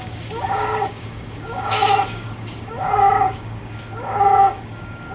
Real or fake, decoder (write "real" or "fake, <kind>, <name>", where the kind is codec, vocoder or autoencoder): fake, codec, DAC